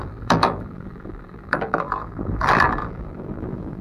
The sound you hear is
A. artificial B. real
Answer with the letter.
A